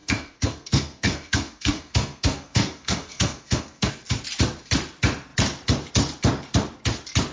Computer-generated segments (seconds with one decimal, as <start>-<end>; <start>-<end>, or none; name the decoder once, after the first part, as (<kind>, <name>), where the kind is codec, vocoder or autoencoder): 0.0-3.9 (codec, SNAC)